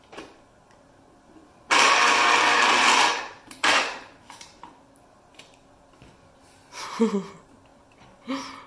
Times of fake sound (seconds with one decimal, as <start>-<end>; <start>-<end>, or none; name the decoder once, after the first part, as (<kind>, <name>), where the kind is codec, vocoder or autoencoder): 1.4-5.4 (vocoder, BigVGAN v2)